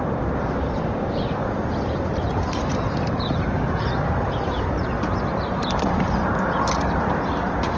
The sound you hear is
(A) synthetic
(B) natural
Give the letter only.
A